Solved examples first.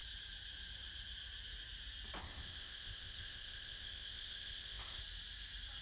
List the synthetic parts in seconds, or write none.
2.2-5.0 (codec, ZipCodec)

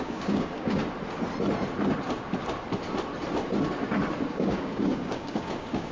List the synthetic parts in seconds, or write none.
0.0-0.8 (codec, DAC); 4.3-5.9

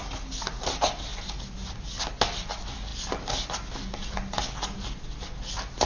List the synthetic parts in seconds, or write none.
none

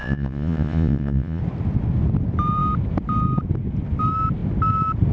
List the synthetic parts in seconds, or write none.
0.0-1.4 (vocoder, Vocos)

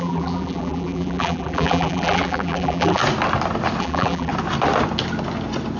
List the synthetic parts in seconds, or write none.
0.0-3.0 (vocoder, BigVGAN v2); 3.8-4.3

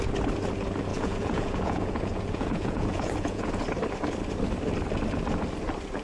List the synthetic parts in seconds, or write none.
0.9-3.5 (vocoder, Vocos)